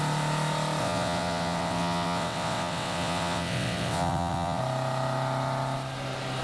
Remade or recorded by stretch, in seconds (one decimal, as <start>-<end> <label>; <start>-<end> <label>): 0.0-0.8 recorded; 0.8-4.6 remade; 4.6-6.4 recorded